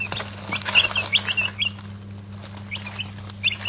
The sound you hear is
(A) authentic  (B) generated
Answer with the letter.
A